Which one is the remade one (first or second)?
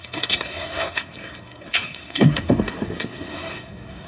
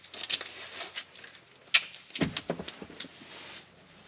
first